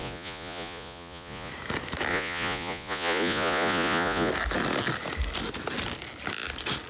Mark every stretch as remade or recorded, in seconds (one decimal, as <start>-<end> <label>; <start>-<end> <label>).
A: 0.0-1.5 remade; 1.5-2.1 recorded; 2.1-4.3 remade; 4.3-6.9 recorded

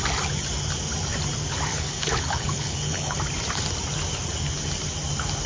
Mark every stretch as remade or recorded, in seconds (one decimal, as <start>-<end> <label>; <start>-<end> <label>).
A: 0.0-1.7 recorded; 1.7-3.2 remade; 3.2-5.5 recorded

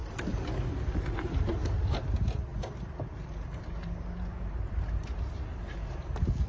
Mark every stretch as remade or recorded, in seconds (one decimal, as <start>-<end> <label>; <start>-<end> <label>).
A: 0.0-6.5 recorded